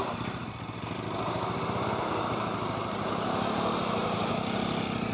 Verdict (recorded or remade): recorded